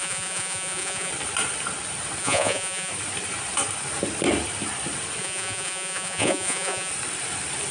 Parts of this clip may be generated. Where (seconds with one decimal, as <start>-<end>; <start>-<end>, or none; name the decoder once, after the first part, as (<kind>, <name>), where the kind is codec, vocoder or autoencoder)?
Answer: 0.0-1.1 (vocoder, Vocos); 2.2-2.9; 5.2-6.9